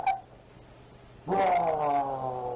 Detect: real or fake real